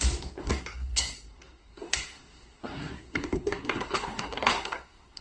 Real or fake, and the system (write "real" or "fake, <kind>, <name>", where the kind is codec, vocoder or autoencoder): fake, codec, SNAC